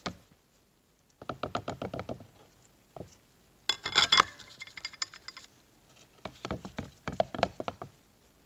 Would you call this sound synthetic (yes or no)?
no